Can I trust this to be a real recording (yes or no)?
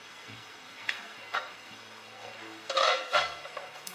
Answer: no